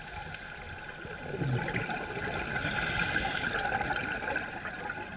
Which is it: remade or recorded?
recorded